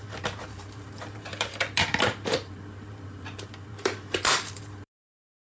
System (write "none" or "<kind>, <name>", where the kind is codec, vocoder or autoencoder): vocoder, BigVGAN v2